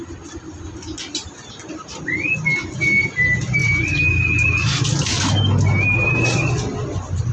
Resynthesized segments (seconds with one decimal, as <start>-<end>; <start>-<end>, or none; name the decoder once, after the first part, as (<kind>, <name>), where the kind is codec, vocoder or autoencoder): none